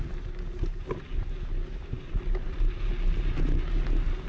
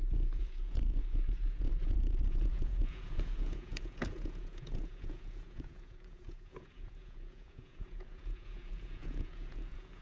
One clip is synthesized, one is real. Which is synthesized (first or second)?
second